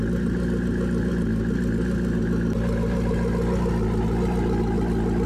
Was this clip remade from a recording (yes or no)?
no